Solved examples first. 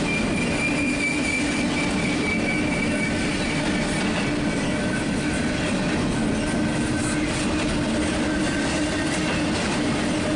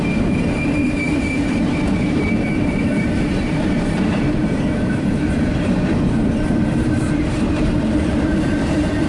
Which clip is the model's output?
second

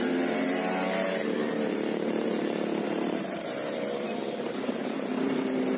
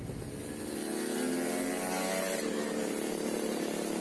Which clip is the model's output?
first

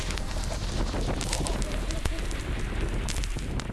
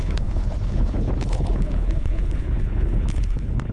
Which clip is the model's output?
second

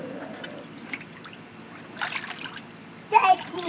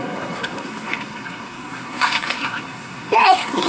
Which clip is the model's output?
second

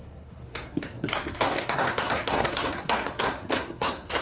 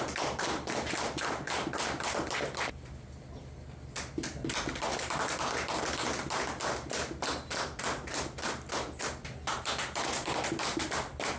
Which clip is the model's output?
first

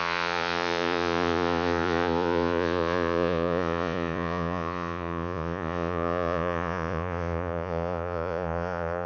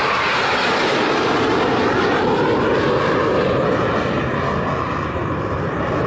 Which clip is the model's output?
first